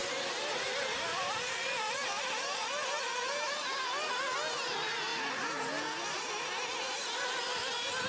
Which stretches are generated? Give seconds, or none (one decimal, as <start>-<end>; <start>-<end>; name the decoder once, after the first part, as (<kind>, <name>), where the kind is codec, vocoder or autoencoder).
none